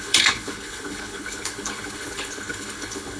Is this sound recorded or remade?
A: remade